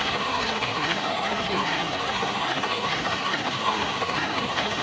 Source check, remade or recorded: remade